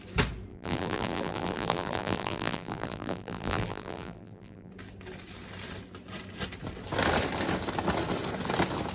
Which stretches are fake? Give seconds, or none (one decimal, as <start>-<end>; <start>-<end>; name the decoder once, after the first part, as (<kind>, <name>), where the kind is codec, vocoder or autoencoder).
0.5-4.7 (vocoder, BigVGAN v2)